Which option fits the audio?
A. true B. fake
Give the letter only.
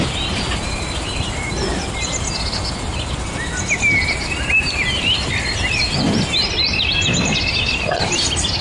A